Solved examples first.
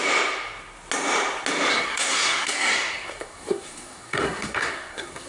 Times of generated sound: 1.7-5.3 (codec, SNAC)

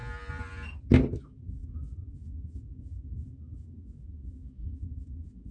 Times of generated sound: 1.2-5.5 (autoencoder, DAC-VAE)